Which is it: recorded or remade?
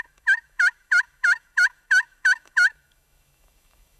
remade